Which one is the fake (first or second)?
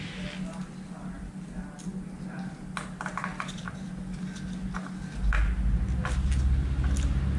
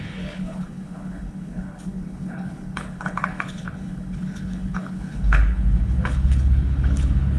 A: second